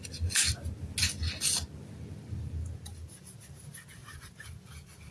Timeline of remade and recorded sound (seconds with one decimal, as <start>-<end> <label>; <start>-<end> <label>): 0.0-5.1 recorded